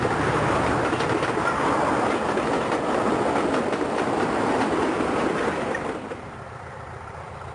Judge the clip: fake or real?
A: fake